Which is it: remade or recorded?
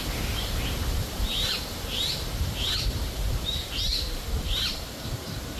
remade